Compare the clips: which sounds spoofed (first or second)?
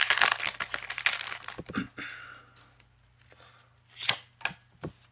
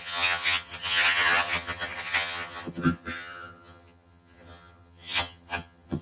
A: second